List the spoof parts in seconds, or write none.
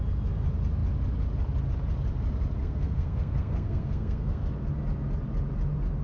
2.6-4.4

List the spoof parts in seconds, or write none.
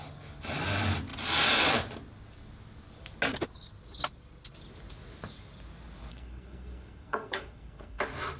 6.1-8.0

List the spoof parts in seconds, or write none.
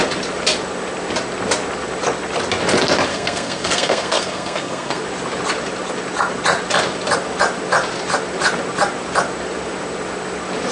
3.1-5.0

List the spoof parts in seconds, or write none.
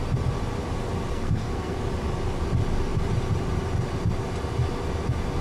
1.1-1.8